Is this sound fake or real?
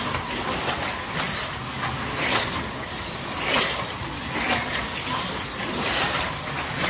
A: real